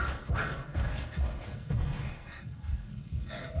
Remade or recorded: remade